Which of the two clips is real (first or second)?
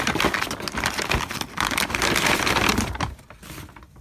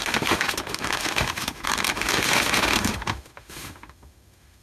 first